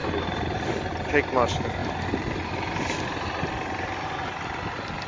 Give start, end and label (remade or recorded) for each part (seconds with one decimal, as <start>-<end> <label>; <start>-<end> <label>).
0.0-0.6 remade; 0.6-5.1 recorded